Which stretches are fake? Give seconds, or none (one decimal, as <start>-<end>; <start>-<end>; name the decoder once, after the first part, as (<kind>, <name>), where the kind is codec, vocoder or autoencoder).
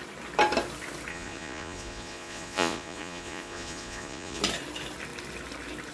1.1-4.4 (vocoder, Vocos)